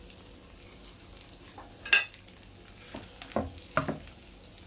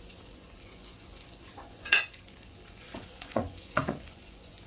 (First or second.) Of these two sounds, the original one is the first